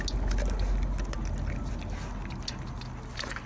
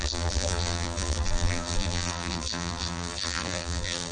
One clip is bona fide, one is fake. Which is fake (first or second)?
second